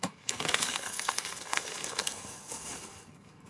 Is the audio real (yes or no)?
no